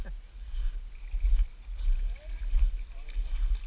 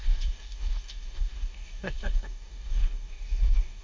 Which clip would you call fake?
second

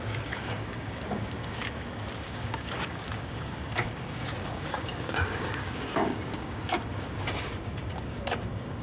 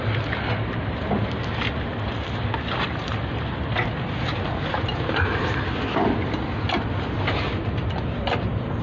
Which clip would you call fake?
first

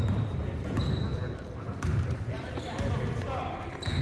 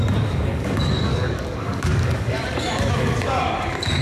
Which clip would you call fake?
second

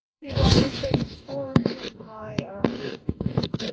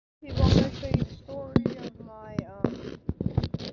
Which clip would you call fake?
first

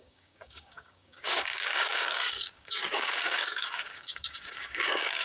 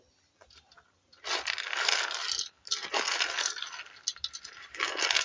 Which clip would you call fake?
first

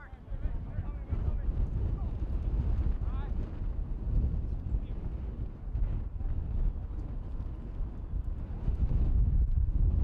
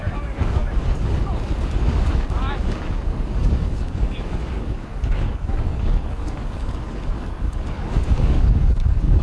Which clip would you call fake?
second